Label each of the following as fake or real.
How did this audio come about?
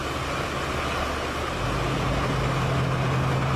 real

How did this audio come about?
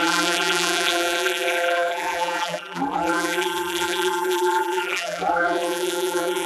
fake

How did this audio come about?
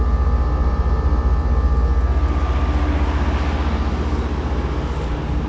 real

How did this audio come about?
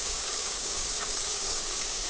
fake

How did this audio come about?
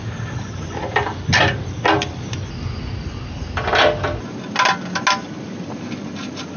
real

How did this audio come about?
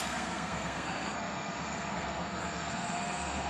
fake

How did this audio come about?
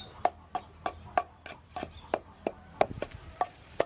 real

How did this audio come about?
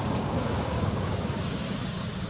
fake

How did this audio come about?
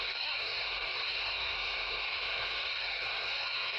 fake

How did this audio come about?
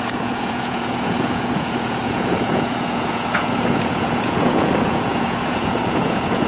fake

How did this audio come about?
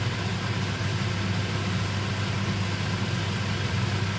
real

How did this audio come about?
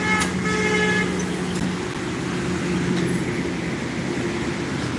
real